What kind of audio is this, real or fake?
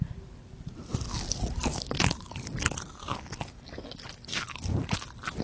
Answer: real